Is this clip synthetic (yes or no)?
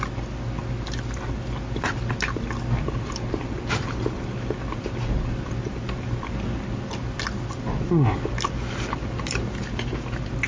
no